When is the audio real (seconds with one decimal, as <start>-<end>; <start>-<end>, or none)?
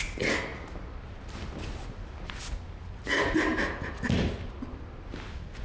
0.0-5.6